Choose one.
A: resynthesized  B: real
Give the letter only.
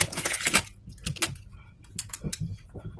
A